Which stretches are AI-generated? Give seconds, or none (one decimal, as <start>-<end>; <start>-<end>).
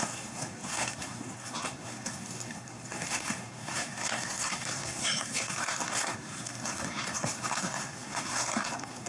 0.0-9.1